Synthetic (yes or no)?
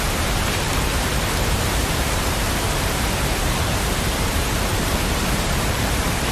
yes